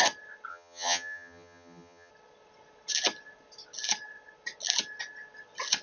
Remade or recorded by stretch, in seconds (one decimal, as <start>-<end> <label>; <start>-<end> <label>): 0.0-0.5 recorded; 0.5-2.1 remade; 2.1-5.8 recorded